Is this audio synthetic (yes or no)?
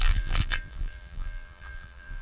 yes